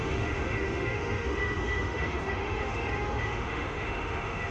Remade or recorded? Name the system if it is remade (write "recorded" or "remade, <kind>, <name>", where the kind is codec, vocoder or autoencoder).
remade, autoencoder, DAC-VAE